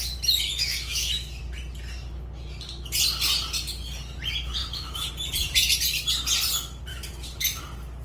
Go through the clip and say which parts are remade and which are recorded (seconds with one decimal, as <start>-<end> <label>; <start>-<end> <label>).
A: 0.0-0.5 recorded; 0.5-1.4 remade; 1.4-4.6 recorded; 4.6-5.1 remade; 5.1-6.9 recorded; 6.9-7.6 remade; 7.6-8.0 recorded